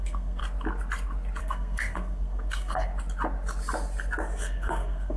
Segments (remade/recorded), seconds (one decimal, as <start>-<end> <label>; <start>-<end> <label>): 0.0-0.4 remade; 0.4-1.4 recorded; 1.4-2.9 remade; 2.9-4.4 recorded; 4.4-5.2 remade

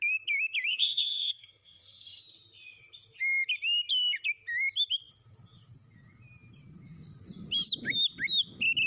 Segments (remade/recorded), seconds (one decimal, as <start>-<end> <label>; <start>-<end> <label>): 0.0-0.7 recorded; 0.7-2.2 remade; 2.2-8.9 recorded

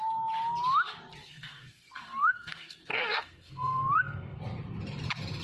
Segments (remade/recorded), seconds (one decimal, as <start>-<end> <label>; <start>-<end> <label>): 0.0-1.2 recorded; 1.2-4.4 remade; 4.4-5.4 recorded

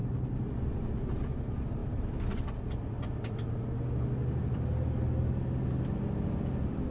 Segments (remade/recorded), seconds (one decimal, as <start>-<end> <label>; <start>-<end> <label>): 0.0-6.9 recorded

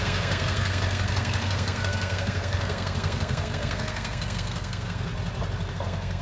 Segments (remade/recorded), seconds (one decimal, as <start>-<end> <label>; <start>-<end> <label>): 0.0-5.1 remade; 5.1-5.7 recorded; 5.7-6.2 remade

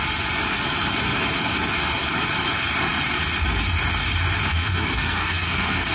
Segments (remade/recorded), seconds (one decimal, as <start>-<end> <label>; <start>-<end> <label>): 0.0-4.5 recorded; 4.5-5.9 remade